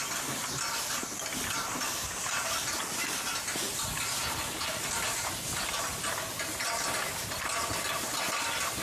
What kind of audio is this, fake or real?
real